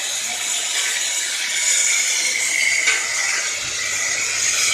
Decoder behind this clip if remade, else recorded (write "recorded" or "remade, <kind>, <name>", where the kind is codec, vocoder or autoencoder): recorded